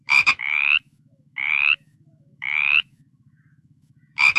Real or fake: fake